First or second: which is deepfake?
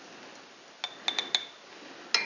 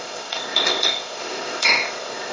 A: second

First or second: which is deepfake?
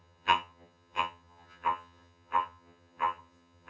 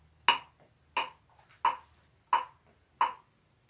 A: first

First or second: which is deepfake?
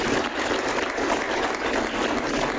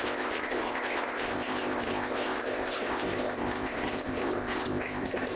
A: second